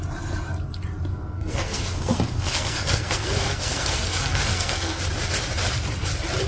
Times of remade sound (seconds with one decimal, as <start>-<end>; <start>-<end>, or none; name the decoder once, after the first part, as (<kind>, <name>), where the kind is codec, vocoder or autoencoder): 1.1-5.0 (codec, SNAC)